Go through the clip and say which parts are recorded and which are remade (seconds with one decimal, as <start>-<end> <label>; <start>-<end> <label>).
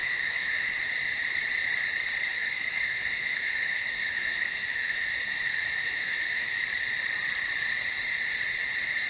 0.0-0.7 remade; 0.7-2.3 recorded; 2.3-6.6 remade; 6.6-9.1 recorded